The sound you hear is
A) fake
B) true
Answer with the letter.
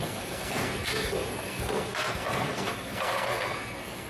A